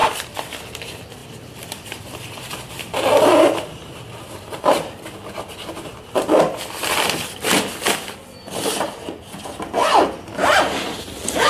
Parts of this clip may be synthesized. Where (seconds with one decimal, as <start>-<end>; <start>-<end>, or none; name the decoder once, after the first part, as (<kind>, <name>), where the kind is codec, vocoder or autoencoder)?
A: 0.0-0.6 (vocoder, BigVGAN v2); 1.2-5.3